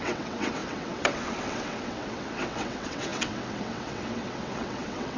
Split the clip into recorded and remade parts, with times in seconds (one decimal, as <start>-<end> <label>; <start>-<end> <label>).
0.0-5.2 remade